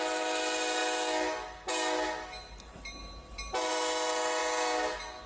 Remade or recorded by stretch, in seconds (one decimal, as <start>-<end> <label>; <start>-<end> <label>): 0.0-5.3 recorded